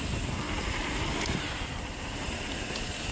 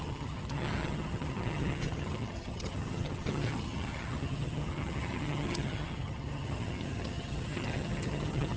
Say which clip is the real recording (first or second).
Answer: first